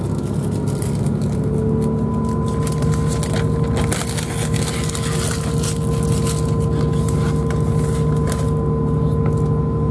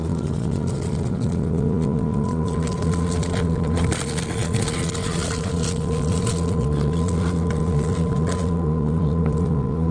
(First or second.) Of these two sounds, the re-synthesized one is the second